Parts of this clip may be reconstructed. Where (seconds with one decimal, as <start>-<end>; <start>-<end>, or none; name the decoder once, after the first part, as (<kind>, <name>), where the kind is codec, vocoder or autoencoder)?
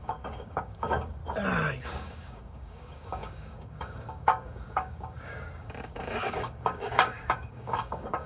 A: 0.0-1.2 (codec, DAC); 1.8-8.3